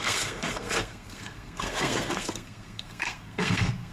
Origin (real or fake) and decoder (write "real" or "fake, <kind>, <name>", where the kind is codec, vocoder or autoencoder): fake, codec, SNAC